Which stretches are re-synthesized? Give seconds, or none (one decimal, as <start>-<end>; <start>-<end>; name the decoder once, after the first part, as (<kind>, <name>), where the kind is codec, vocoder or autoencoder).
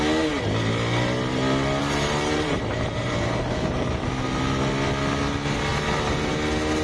1.8-4.1 (vocoder, BigVGAN v2); 5.7-6.3